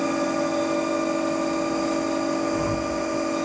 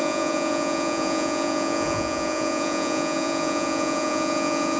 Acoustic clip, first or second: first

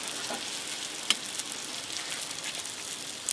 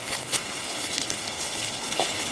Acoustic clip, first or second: first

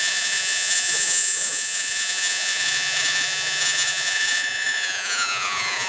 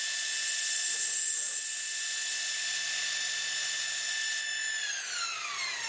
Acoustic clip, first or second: second